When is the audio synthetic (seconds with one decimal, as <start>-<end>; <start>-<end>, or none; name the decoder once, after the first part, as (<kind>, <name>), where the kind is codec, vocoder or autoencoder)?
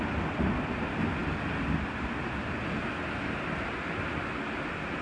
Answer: none